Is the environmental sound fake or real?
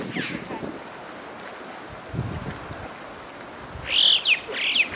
real